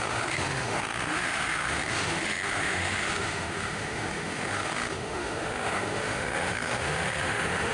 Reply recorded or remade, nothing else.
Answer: remade